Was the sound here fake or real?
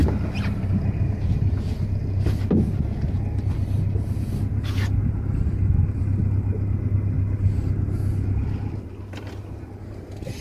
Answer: real